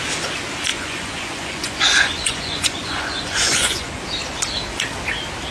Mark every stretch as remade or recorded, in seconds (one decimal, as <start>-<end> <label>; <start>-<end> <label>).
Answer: 0.0-0.7 recorded; 0.7-4.0 remade; 4.0-5.5 recorded